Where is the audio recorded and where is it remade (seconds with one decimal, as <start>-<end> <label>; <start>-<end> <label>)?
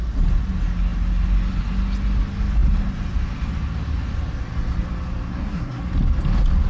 0.0-5.3 recorded; 5.3-5.8 remade; 5.8-6.7 recorded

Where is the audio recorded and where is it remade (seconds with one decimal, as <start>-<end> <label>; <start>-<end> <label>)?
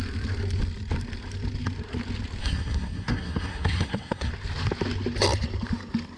0.0-2.4 recorded; 2.4-4.3 remade; 4.3-6.2 recorded